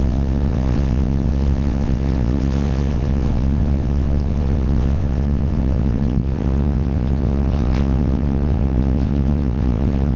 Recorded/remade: remade